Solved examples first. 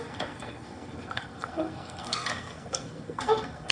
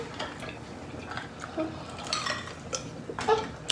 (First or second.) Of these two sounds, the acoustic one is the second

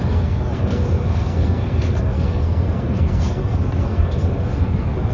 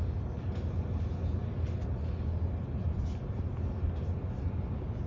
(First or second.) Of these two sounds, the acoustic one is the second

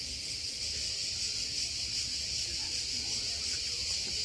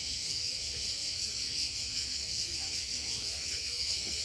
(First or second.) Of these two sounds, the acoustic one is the first